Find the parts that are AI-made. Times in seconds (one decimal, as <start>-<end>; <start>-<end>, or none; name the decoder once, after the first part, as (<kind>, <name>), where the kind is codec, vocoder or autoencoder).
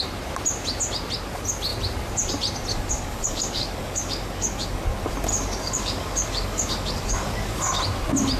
2.7-4.8 (codec, DAC); 5.3-7.8